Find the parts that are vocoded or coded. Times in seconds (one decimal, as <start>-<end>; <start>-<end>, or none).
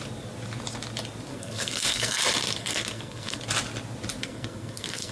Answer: 1.3-2.2; 2.6-3.4; 4.2-5.1